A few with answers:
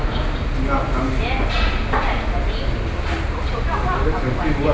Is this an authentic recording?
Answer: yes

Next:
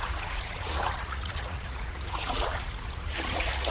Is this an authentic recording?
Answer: no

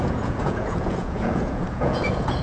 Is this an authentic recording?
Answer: no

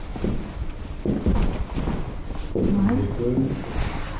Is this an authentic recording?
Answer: yes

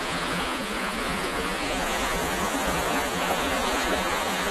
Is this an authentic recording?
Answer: no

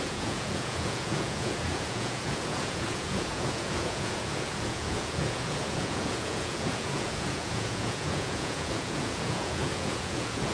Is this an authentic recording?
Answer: no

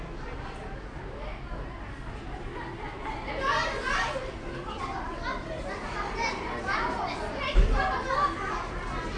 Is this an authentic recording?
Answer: yes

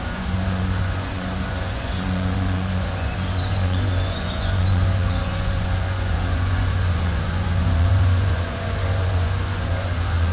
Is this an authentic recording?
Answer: no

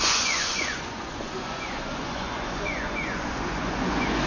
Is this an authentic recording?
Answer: no